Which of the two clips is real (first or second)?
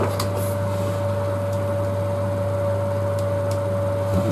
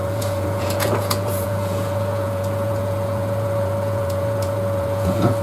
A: first